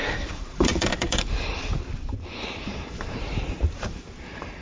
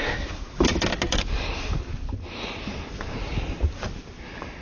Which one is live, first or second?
second